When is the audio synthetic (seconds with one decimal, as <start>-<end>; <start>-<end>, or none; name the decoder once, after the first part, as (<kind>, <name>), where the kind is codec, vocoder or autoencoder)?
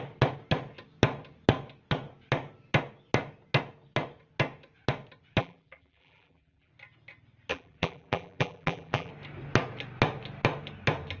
5.4-6.7 (vocoder, BigVGAN v2); 7.5-9.1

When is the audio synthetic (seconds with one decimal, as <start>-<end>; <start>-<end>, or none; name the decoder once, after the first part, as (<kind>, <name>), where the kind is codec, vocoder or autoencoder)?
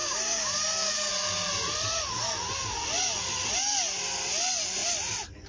0.0-1.1 (codec, DAC)